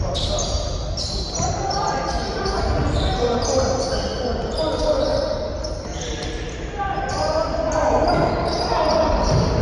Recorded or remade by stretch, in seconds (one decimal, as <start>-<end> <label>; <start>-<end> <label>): 0.0-9.6 recorded

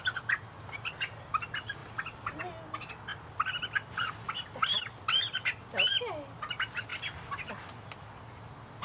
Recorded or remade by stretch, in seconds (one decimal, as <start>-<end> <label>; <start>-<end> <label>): 0.0-1.8 recorded; 1.8-2.4 remade; 2.4-3.1 recorded; 3.1-4.8 remade; 4.8-8.8 recorded